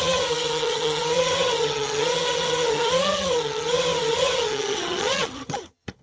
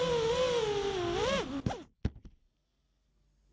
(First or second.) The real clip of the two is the second